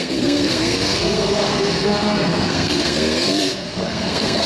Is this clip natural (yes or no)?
no